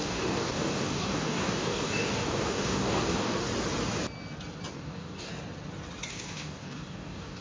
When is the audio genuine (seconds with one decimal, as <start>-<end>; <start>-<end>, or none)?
3.5-4.7; 5.3-6.1